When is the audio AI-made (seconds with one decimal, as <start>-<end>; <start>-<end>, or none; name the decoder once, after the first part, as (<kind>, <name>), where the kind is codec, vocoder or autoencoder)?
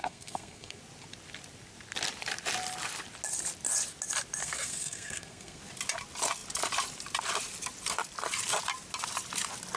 0.0-0.8 (codec, SNAC); 4.4-5.6